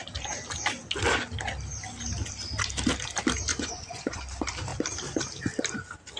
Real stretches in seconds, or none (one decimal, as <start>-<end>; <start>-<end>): 0.0-3.5; 4.2-6.2